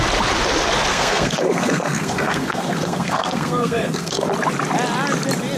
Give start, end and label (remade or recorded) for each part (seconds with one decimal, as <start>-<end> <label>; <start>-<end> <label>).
0.0-0.9 recorded; 0.9-4.3 remade; 4.3-5.6 recorded